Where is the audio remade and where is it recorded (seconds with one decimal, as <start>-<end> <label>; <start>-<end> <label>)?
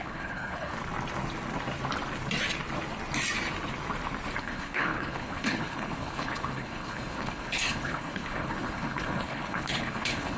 0.0-0.7 remade; 0.7-4.4 recorded; 4.4-10.4 remade